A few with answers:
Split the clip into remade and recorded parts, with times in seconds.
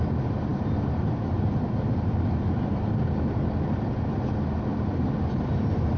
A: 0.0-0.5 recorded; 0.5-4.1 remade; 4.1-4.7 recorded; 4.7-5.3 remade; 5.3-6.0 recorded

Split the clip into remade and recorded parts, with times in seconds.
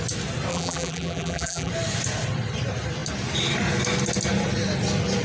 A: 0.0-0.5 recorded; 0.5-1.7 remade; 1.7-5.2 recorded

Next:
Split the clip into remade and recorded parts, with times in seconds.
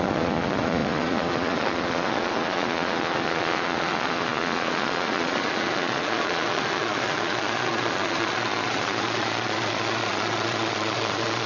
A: 0.0-11.5 remade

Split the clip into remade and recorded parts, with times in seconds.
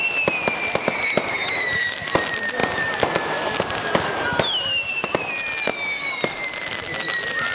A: 0.0-7.5 recorded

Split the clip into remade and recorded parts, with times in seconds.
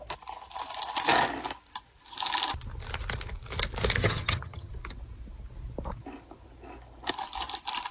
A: 0.0-4.0 recorded; 4.0-4.7 remade; 4.7-7.9 recorded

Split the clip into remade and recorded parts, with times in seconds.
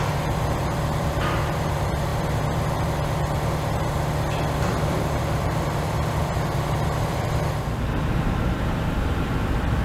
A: 0.0-2.1 remade; 2.1-5.2 recorded; 5.2-9.8 remade